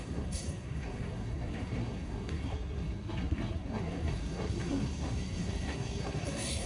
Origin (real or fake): fake